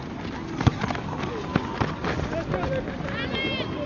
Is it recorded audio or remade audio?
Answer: recorded